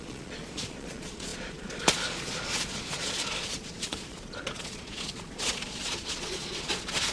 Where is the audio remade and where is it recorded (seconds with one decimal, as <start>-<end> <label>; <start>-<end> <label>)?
0.0-7.1 remade